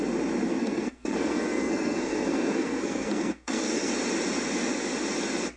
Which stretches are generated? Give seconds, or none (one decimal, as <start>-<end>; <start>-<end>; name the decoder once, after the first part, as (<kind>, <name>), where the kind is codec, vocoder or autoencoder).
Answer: 0.5-3.9 (codec, SNAC)